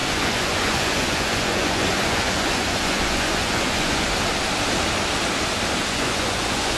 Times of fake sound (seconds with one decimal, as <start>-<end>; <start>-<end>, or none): 0.0-4.1; 5.8-6.8